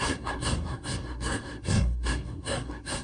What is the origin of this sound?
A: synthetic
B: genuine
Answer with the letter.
A